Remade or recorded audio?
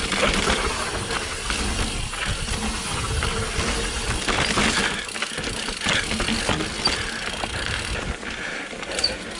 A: recorded